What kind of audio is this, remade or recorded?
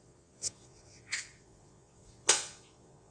remade